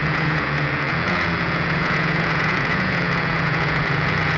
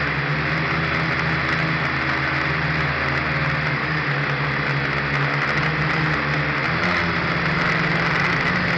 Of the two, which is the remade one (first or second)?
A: first